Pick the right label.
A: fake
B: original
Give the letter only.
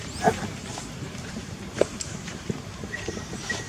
A